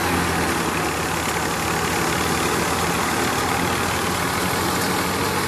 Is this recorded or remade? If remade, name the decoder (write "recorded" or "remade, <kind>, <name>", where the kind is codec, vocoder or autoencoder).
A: recorded